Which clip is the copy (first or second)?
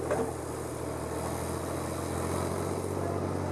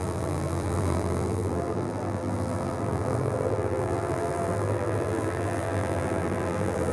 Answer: second